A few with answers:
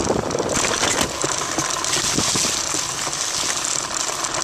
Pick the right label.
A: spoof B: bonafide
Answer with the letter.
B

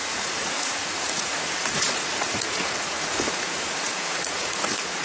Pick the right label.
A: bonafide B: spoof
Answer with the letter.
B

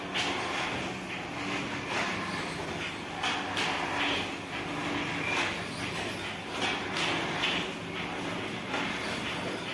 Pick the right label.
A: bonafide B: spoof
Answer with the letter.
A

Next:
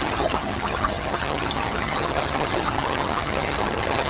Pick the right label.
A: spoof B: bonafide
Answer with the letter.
A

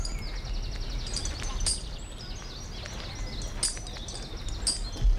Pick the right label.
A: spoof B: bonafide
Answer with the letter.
B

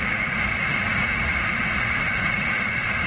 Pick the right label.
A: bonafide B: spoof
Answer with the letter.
B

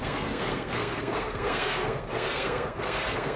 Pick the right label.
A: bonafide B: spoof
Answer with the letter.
B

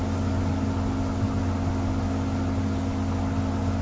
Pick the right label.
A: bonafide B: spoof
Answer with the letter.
A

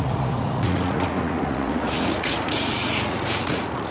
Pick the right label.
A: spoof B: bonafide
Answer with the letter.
A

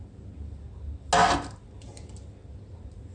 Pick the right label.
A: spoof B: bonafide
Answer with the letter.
B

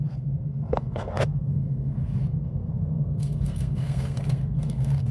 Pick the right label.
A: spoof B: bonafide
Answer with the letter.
A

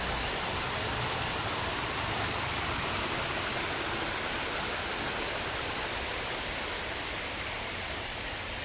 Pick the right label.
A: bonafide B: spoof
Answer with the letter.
B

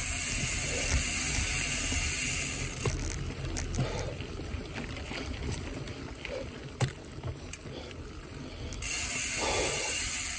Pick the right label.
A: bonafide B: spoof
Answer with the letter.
A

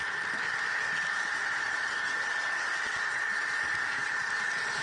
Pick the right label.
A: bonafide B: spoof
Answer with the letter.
A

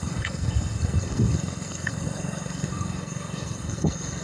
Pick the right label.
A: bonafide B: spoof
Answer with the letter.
B